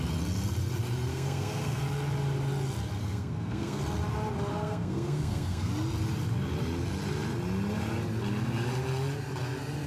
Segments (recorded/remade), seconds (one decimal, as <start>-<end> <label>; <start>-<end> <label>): 0.0-1.1 recorded; 1.1-1.8 remade; 1.8-3.0 recorded; 3.0-3.8 remade; 3.8-4.5 recorded; 4.5-5.7 remade; 5.7-9.9 recorded